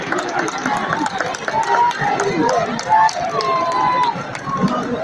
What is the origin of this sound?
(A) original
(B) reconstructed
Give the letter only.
A